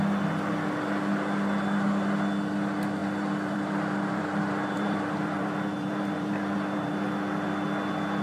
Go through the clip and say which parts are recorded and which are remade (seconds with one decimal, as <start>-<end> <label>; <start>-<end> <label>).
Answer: 0.0-3.0 recorded; 3.0-6.9 remade; 6.9-8.2 recorded